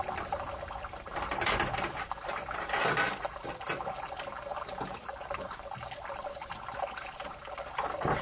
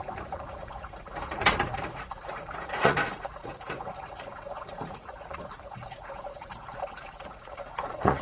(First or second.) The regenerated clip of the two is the second